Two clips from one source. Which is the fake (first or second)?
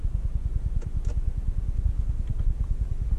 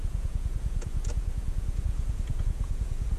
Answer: second